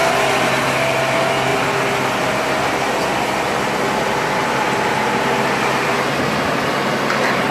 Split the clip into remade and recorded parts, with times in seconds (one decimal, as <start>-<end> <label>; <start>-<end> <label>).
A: 0.0-4.4 recorded; 4.4-6.5 remade; 6.5-7.5 recorded